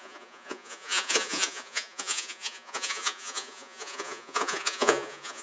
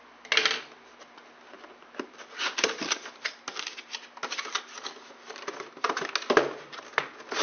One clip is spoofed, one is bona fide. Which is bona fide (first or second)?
second